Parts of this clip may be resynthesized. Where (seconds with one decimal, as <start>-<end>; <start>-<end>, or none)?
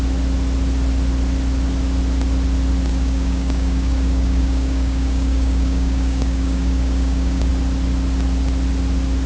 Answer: 2.9-7.5